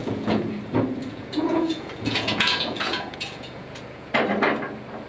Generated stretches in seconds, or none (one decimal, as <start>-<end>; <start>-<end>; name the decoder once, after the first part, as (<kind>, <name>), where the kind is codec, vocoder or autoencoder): 0.0-0.6 (vocoder, Vocos); 1.0-4.1